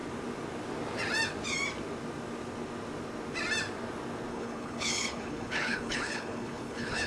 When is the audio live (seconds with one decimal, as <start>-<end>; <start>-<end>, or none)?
0.0-4.3